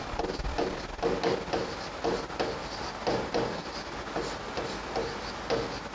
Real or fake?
real